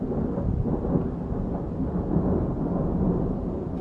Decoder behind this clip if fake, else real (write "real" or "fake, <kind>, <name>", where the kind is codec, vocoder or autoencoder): real